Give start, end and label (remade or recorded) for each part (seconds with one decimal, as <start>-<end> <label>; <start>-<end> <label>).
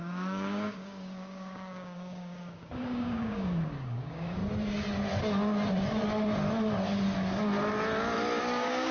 0.0-4.4 remade; 4.4-8.4 recorded; 8.4-8.9 remade